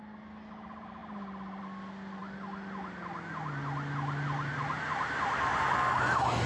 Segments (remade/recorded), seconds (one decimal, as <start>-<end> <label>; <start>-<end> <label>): 0.0-6.5 recorded